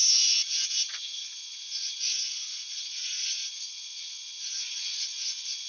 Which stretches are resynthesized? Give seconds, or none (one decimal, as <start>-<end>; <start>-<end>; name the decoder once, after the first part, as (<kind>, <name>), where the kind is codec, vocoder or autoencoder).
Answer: 0.0-5.7 (vocoder, Vocos)